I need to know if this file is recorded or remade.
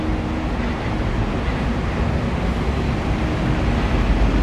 recorded